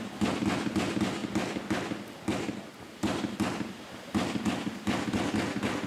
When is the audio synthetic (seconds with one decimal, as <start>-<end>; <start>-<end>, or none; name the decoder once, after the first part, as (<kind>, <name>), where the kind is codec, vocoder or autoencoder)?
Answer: none